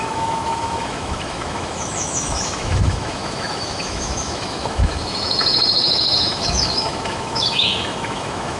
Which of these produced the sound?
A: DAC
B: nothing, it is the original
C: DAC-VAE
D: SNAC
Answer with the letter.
C